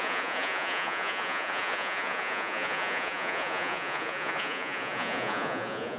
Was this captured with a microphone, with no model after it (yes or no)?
no